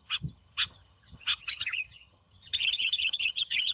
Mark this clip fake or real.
fake